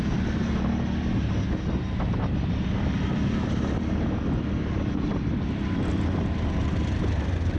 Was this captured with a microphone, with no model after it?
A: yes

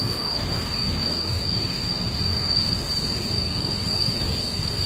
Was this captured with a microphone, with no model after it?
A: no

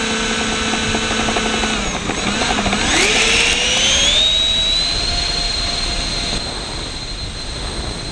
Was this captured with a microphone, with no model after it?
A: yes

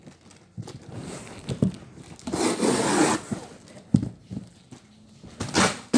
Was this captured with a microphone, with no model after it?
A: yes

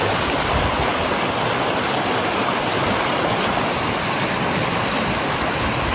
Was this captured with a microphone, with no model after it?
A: yes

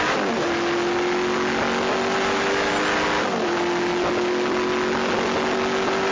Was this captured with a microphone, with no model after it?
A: yes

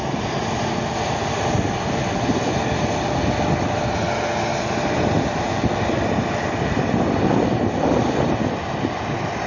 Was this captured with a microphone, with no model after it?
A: yes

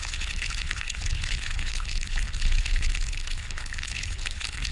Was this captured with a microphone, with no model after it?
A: no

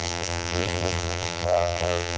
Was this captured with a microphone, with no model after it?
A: no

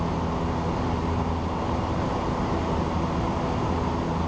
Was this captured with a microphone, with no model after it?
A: yes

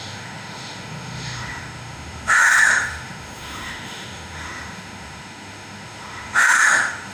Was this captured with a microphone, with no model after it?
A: no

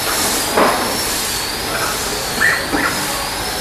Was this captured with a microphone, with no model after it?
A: yes